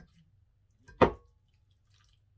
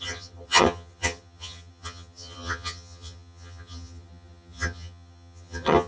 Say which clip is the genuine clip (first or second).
first